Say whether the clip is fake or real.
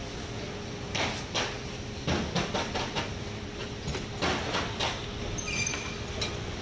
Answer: real